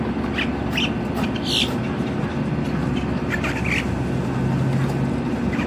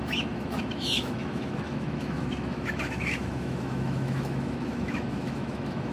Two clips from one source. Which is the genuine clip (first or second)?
first